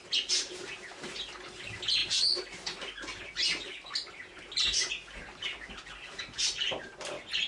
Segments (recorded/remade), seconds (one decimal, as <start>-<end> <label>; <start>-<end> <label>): 0.0-7.5 recorded